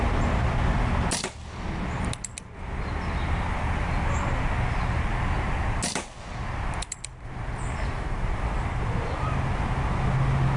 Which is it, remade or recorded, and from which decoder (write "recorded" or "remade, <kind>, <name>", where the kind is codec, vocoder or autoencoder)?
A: recorded